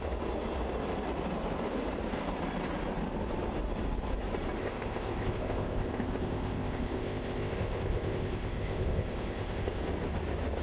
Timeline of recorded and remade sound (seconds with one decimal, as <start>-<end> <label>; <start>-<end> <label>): 0.0-4.6 recorded; 4.6-9.8 remade; 9.8-10.6 recorded